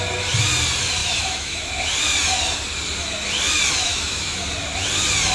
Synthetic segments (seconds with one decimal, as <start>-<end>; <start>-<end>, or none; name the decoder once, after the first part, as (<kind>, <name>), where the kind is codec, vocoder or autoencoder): 1.0-1.7 (autoencoder, DAC-VAE); 3.9-4.4